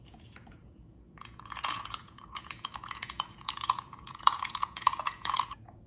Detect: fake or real fake